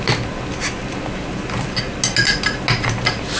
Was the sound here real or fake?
real